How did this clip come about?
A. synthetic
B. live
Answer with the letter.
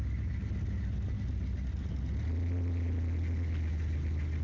B